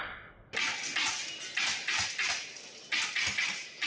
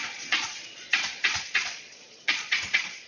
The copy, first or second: second